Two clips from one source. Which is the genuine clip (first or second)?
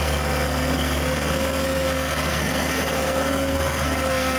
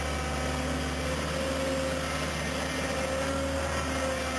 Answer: second